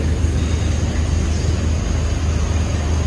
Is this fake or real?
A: real